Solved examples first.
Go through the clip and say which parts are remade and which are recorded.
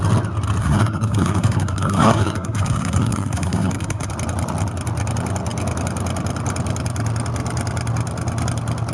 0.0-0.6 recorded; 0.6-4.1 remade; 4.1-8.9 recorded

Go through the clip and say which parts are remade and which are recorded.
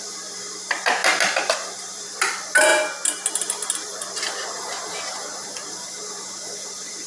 0.0-1.0 remade; 1.0-1.8 recorded; 1.8-7.1 remade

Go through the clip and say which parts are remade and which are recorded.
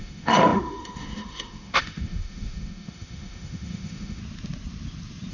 0.0-4.2 remade; 4.2-5.3 recorded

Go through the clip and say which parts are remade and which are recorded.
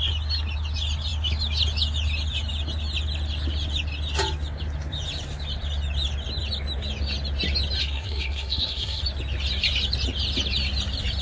0.0-7.8 recorded; 7.8-9.0 remade; 9.0-11.2 recorded